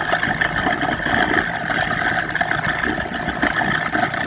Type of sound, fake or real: real